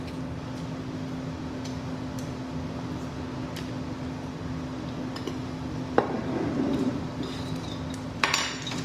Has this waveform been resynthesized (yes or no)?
yes